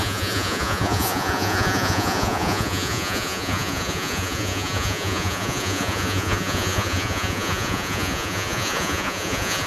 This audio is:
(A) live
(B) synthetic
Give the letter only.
B